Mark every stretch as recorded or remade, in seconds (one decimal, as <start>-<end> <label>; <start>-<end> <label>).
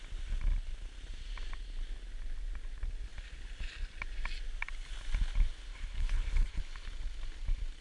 0.0-5.7 recorded; 5.7-6.6 remade; 6.6-7.8 recorded